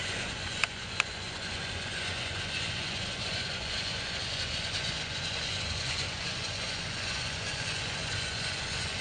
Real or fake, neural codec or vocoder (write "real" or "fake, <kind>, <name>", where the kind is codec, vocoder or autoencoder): fake, vocoder, Vocos